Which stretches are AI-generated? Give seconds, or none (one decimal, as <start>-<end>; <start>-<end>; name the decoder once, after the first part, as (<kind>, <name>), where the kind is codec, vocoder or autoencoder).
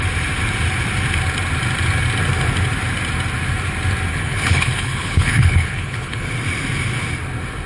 4.1-6.3 (codec, HILCodec)